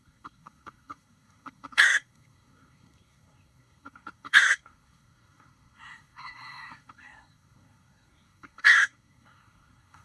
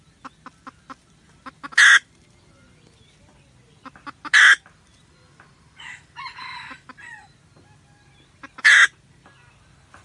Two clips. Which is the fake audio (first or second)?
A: first